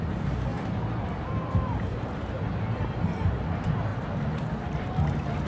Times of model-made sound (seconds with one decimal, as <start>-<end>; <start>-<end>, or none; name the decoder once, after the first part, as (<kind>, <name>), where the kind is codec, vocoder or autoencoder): 0.5-2.3 (vocoder, BigVGAN v2); 3.9-4.5